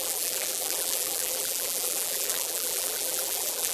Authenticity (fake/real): fake